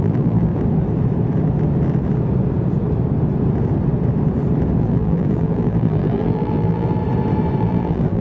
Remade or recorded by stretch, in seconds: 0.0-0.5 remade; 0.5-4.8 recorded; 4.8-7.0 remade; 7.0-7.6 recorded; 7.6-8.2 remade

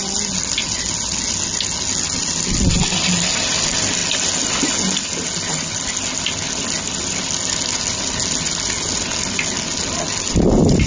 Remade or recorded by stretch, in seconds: 0.0-10.9 recorded

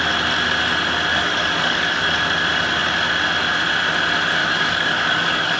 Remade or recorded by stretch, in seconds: 0.0-1.1 recorded; 1.1-2.0 remade; 2.0-4.4 recorded; 4.4-5.6 remade

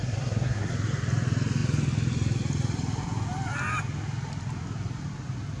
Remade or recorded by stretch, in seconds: 0.0-0.7 remade; 0.7-5.6 recorded

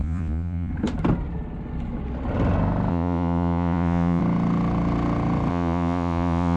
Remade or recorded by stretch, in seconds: 0.0-0.7 remade; 0.7-2.9 recorded; 2.9-4.2 remade; 4.2-5.5 recorded; 5.5-6.6 remade

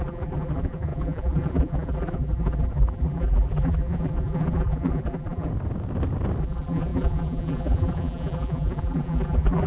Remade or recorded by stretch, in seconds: 0.0-5.5 remade; 5.5-6.4 recorded; 6.4-9.7 remade